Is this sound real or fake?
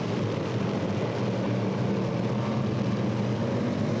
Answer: real